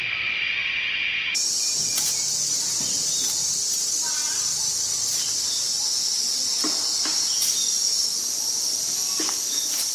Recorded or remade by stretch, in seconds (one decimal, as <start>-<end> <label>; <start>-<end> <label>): 0.0-0.6 recorded; 0.6-1.8 remade; 1.8-7.0 recorded; 7.0-9.9 remade